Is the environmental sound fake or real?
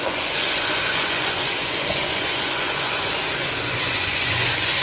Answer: fake